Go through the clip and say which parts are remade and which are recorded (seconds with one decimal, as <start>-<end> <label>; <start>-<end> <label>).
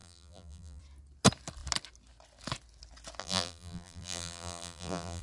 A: 0.0-0.8 remade; 0.8-3.2 recorded; 3.2-5.2 remade